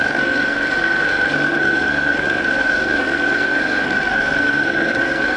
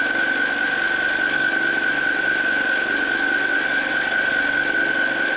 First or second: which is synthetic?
first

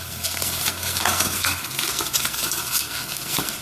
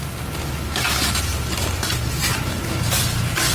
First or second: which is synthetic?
first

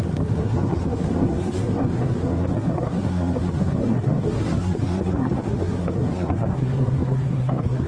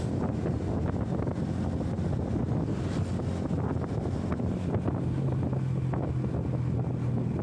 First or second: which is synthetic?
first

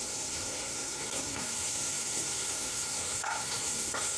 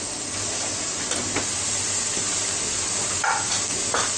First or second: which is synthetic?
first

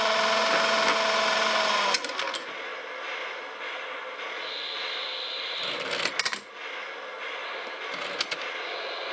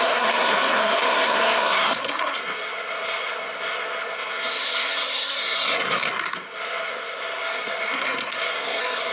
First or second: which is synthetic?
second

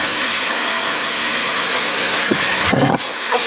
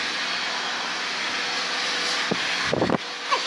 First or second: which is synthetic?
first